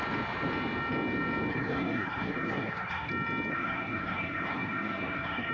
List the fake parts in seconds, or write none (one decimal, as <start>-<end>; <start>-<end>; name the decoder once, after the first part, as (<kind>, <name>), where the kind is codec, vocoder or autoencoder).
1.5-3.1 (codec, SNAC); 3.5-5.5

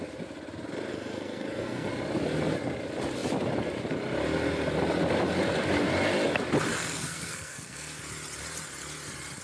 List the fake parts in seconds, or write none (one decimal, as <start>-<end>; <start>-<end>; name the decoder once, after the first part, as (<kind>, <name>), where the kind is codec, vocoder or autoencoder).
0.9-1.9 (codec, SNAC); 6.7-8.0

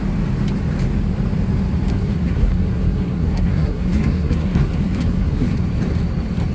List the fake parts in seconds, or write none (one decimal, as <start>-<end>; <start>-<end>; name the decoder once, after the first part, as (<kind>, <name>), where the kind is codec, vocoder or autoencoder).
1.9-5.6 (codec, SNAC)

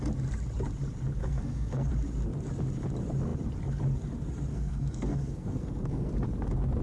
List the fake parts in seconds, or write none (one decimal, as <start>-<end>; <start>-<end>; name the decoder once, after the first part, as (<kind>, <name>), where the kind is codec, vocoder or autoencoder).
1.2-1.9 (codec, SNAC); 4.5-6.1